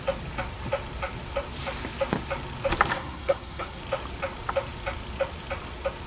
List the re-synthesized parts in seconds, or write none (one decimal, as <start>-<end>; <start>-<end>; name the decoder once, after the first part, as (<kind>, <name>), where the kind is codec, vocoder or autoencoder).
2.9-3.8 (codec, SNAC)